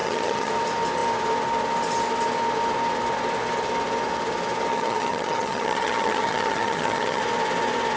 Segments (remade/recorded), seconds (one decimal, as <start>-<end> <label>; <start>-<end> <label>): 0.0-0.5 remade; 0.5-4.7 recorded; 4.7-7.2 remade; 7.2-8.0 recorded